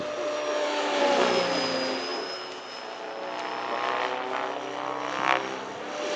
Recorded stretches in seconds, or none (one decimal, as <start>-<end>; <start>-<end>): 0.0-0.5; 1.0-6.2